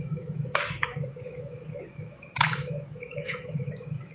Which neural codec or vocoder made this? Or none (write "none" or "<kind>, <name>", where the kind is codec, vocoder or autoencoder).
autoencoder, DAC-VAE